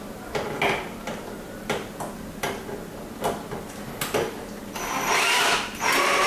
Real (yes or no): yes